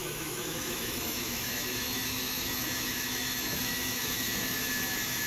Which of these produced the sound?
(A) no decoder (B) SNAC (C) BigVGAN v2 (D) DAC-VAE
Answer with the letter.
D